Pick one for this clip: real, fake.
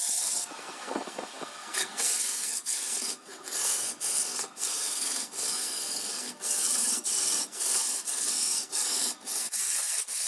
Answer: fake